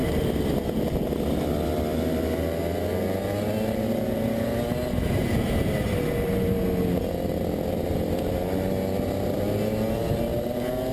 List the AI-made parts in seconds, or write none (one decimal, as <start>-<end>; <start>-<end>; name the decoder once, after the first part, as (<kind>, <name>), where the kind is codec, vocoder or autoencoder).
none